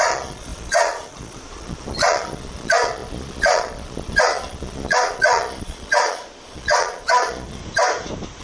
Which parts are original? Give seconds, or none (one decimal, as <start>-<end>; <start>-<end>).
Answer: 7.6-8.4